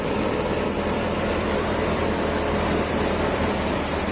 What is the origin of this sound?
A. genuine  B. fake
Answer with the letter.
B